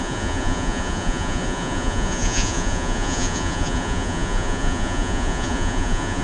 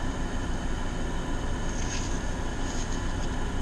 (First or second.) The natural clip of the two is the second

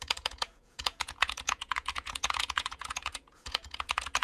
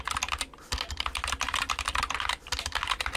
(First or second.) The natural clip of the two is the second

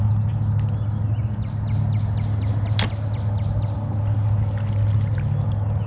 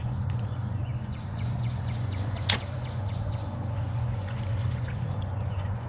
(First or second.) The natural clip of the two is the first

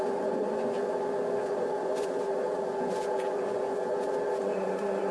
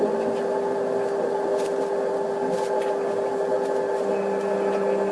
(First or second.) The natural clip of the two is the second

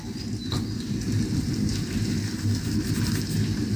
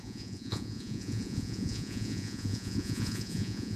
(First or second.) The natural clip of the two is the first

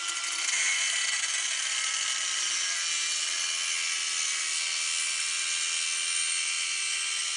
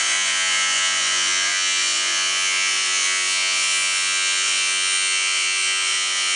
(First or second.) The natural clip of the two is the first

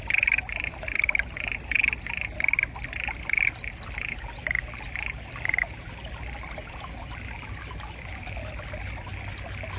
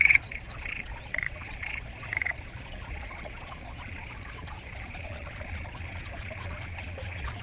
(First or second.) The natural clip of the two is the first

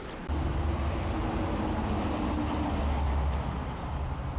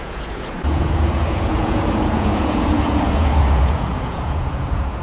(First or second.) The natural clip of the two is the first